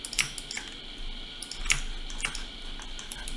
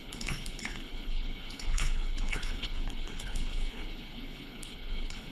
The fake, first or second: second